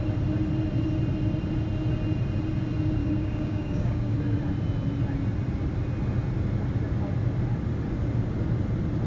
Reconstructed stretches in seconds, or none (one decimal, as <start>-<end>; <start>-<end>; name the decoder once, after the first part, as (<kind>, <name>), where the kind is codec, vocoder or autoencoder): 3.0-4.2 (codec, DAC)